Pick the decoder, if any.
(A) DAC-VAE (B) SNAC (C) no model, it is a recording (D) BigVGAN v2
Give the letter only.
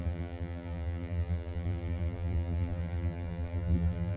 D